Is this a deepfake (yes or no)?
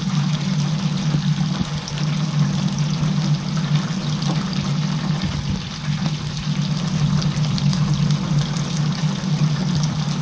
no